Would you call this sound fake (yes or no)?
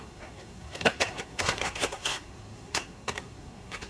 yes